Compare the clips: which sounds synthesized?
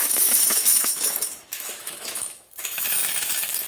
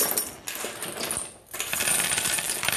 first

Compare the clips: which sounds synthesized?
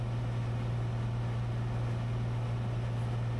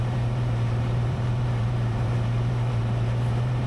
second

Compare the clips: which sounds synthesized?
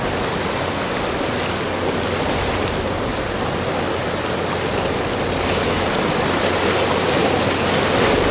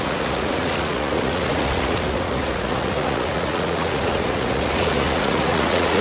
second